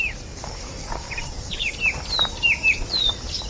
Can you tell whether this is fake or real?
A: fake